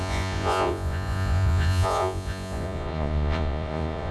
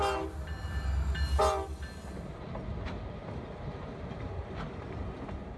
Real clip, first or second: second